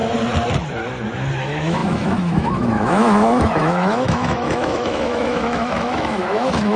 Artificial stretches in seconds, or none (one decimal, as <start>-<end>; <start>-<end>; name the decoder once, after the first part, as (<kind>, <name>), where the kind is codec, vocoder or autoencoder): 1.4-6.8 (autoencoder, DAC-VAE)